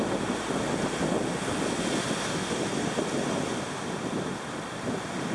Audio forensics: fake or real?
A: real